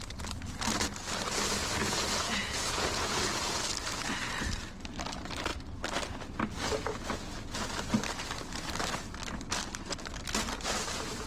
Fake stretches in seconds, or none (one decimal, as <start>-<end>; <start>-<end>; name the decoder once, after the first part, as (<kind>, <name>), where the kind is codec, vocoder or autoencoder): 1.8-3.6 (vocoder, Vocos)